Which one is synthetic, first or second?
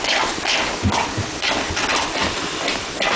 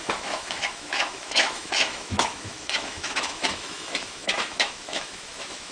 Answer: second